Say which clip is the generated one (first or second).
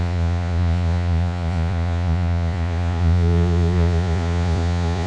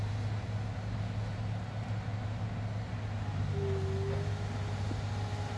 first